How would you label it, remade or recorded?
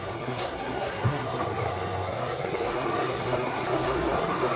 remade